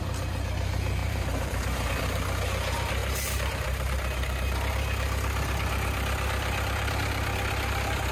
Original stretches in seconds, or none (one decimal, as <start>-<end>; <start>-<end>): 0.0-1.0; 1.9-3.0; 4.5-8.1